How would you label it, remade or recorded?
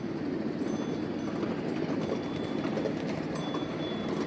recorded